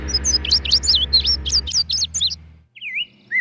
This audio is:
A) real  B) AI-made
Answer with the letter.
A